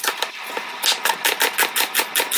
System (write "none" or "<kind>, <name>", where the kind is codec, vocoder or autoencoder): none